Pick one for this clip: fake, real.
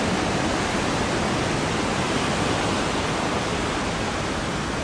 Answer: real